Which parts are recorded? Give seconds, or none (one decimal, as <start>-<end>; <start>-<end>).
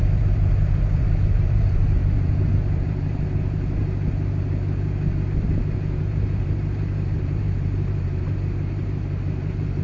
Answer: 3.8-6.0